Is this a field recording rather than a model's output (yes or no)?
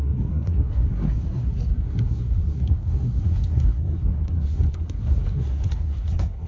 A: no